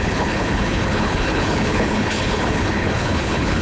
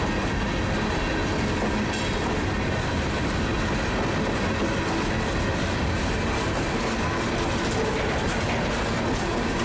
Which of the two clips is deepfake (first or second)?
first